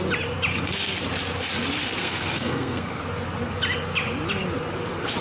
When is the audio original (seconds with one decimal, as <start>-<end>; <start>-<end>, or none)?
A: 0.0-2.0; 3.0-5.2